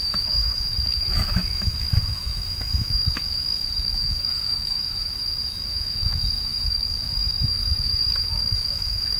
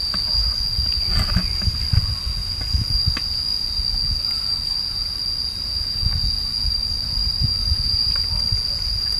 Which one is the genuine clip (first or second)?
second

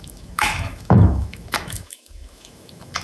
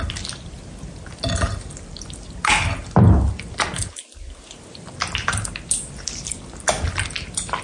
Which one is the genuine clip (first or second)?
second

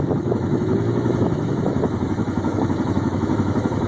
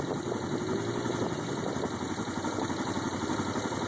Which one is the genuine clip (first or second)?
second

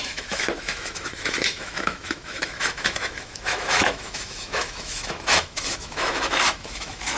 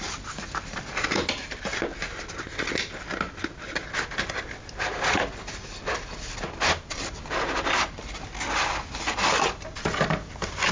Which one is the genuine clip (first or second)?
second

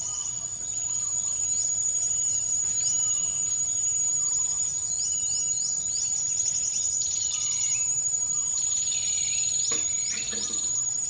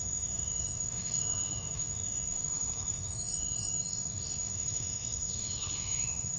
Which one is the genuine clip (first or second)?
first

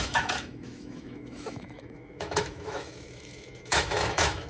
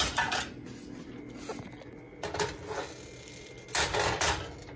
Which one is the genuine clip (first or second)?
second